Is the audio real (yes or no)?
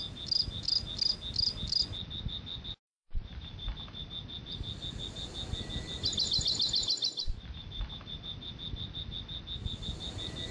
yes